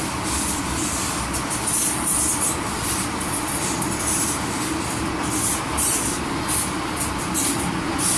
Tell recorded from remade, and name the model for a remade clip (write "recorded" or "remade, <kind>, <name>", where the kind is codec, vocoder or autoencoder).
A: recorded